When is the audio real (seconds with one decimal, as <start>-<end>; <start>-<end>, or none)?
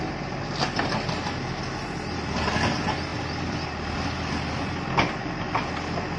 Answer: 0.0-6.2